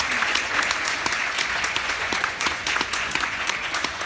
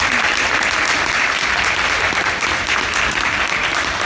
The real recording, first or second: second